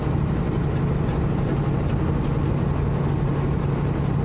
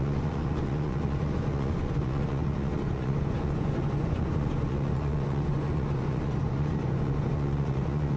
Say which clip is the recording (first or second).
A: first